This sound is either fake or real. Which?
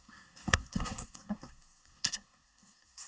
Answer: fake